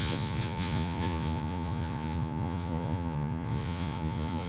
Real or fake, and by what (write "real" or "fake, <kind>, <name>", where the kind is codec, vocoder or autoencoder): fake, vocoder, Vocos